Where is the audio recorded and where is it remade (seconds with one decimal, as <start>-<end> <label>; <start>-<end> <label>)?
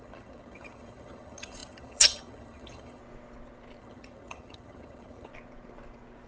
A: 0.0-3.0 remade; 3.0-3.8 recorded; 3.8-5.3 remade; 5.3-6.3 recorded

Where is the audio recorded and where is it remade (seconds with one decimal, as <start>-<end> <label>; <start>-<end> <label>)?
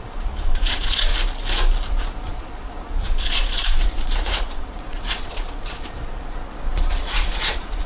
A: 0.0-1.1 remade; 1.1-1.9 recorded; 1.9-7.9 remade